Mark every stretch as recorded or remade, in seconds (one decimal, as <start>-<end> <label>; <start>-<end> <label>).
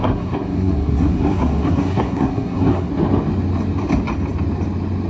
0.0-2.9 remade; 2.9-5.1 recorded